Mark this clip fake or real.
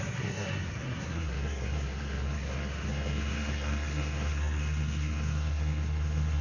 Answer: fake